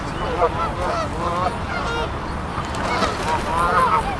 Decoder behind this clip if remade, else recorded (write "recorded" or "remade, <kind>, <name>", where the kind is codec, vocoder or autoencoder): recorded